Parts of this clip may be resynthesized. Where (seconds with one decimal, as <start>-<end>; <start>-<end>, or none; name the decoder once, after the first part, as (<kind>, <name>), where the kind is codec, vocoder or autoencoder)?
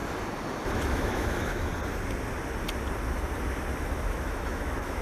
0.6-1.7 (autoencoder, DAC-VAE); 3.8-5.0